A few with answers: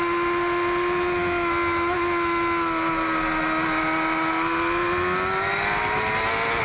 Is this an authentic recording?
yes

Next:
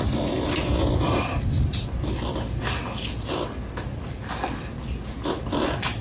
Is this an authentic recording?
yes